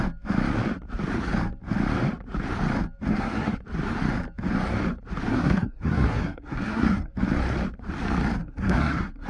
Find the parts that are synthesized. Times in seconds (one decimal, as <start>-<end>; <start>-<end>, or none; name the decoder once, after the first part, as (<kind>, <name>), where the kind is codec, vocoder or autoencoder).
3.1-3.6 (codec, SNAC); 5.3-7.1; 8.4-9.3